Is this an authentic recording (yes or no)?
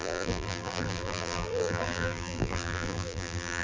no